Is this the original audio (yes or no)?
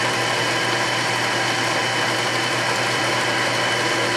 yes